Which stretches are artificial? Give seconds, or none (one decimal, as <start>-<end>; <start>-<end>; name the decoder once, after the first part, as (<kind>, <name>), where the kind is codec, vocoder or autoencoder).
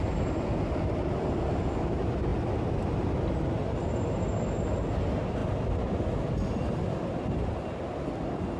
none